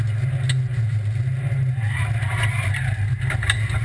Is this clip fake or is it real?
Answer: real